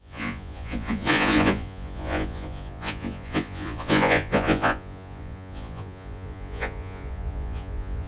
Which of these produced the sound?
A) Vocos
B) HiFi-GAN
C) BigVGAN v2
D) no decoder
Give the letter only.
A